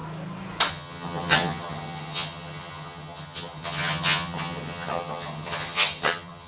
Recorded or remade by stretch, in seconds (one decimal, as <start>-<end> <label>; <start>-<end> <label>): 0.0-0.7 recorded; 0.7-6.5 remade